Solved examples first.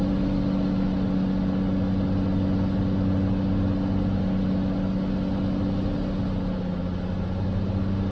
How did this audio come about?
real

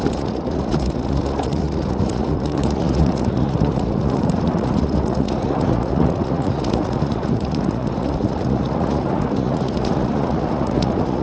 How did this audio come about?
fake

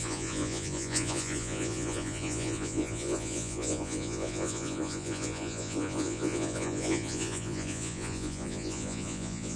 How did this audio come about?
fake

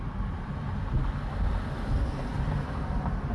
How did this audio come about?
real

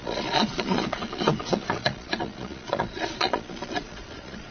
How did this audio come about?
fake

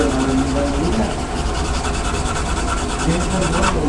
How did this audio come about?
real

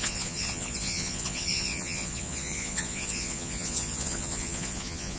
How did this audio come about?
fake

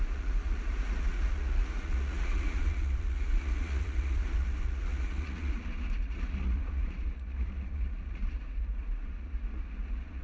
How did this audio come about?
fake